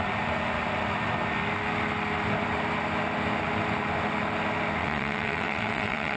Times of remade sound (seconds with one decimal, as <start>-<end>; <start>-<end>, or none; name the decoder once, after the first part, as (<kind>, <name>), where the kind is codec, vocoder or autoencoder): 4.8-6.2 (vocoder, WaveNeXt)